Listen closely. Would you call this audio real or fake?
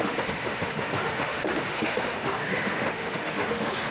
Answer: fake